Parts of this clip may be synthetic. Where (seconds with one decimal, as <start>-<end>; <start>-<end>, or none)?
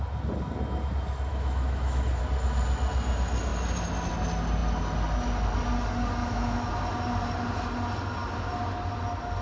1.3-2.2; 6.2-6.7